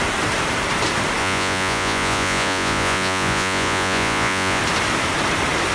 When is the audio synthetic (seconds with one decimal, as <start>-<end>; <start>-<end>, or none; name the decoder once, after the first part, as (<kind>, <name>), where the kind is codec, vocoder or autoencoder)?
1.2-4.6 (vocoder, Vocos)